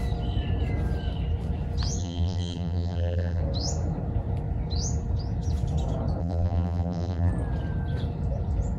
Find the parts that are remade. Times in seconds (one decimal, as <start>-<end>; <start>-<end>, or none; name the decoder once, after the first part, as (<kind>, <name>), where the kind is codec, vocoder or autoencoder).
2.0-3.4 (vocoder, BigVGAN v2); 6.2-7.3